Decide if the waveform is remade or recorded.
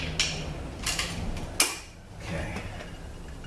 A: recorded